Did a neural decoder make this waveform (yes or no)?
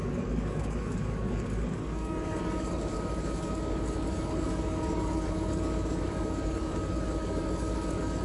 yes